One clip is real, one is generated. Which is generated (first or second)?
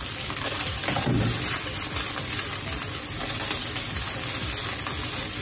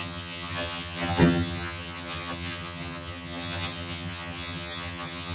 second